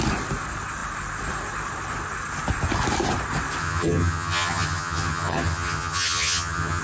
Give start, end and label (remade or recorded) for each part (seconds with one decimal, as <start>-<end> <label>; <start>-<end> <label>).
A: 0.0-3.6 recorded; 3.6-6.8 remade